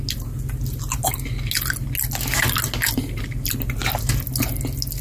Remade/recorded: recorded